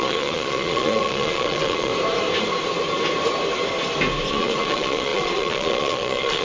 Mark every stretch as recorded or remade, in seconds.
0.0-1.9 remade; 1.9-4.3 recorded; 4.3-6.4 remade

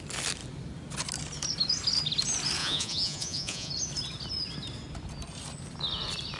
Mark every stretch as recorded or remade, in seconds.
0.0-2.6 recorded; 2.6-3.7 remade; 3.7-6.4 recorded

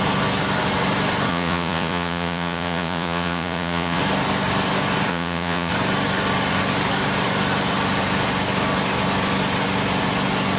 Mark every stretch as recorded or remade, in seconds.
0.0-1.3 recorded; 1.3-4.0 remade; 4.0-5.1 recorded; 5.1-5.7 remade; 5.7-10.6 recorded